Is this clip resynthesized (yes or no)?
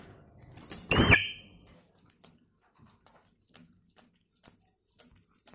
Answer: no